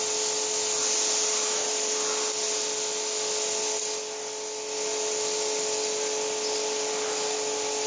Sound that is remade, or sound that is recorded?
recorded